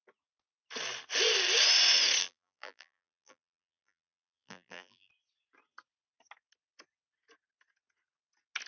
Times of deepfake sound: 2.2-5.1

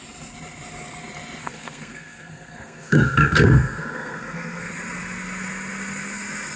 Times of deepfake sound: 1.4-4.7

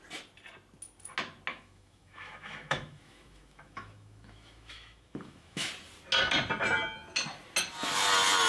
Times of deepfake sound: 1.5-5.7

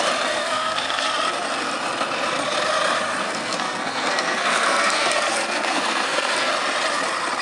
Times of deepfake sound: 0.4-1.1; 3.2-6.5

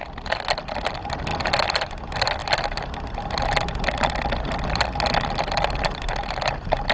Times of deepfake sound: 0.0-2.4; 5.7-6.9

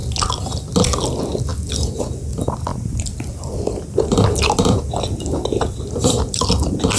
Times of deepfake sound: 2.7-6.5

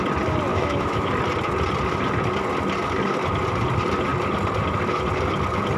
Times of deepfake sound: 0.5-1.1